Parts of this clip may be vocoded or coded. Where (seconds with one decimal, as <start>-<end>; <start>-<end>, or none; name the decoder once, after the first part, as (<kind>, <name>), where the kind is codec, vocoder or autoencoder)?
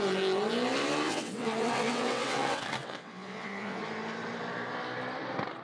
1.1-3.8 (vocoder, WaveNeXt)